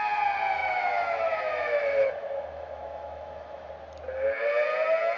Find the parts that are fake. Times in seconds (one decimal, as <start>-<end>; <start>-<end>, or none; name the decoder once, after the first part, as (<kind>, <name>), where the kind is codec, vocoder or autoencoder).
0.6-3.7 (autoencoder, DAC-VAE)